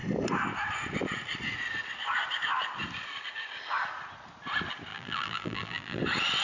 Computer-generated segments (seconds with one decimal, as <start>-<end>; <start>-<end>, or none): 4.9-6.0